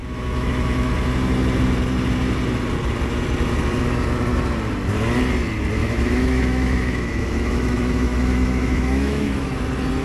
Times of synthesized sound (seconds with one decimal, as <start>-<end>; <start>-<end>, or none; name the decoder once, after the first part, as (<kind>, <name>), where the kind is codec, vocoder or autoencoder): 0.0-0.9 (autoencoder, DAC-VAE); 5.8-9.6